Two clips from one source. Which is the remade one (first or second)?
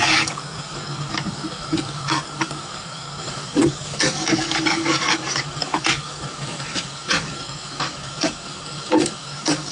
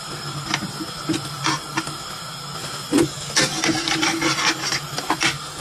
first